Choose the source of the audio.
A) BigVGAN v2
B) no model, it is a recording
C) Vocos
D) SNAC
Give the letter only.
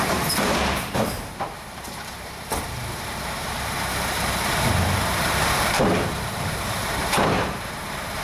A